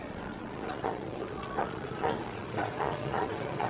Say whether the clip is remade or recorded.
remade